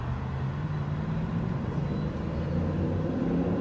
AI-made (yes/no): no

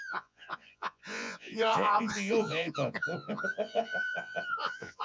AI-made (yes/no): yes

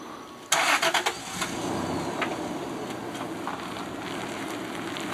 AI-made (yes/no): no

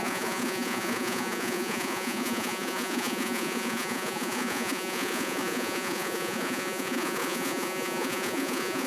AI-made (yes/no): yes